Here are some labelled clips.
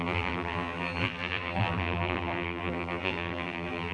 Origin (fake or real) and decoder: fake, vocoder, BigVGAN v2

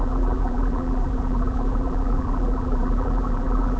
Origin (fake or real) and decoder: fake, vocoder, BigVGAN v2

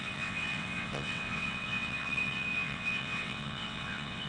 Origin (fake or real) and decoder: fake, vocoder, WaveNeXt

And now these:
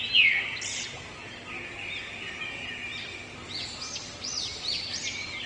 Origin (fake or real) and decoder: real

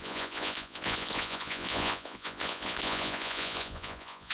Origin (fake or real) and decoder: fake, vocoder, Vocos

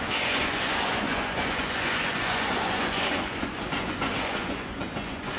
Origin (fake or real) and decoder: fake, vocoder, Vocos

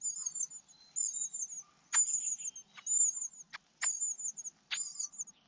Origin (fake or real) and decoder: real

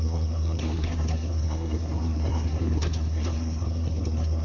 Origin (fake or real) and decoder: fake, codec, SNAC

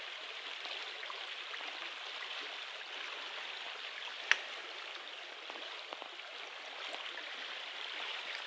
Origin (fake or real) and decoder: real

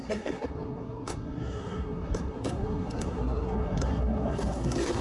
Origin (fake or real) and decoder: fake, codec, SNAC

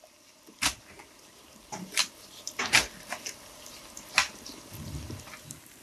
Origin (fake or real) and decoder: real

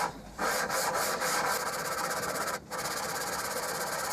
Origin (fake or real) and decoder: fake, vocoder, BigVGAN v2